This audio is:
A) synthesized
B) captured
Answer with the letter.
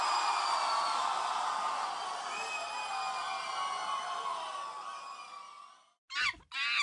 B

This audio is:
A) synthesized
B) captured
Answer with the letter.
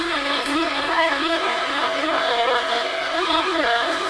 A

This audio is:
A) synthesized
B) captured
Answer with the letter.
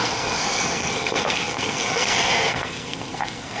A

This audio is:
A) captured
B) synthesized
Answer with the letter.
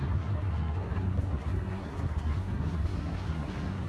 B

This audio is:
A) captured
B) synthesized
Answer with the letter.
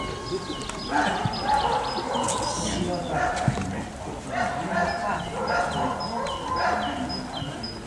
A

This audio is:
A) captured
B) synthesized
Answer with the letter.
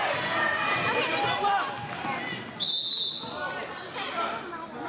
A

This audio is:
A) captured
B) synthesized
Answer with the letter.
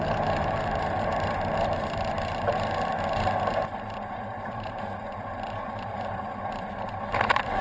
B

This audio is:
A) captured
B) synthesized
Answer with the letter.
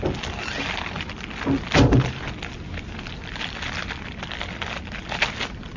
A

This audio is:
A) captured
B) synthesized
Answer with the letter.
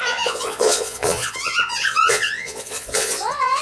B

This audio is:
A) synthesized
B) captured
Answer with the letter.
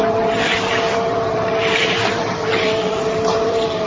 A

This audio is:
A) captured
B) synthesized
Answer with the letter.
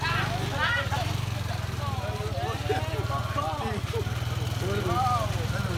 A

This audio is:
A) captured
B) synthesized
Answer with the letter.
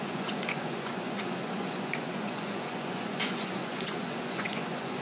B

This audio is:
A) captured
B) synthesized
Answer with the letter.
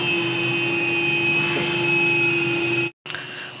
A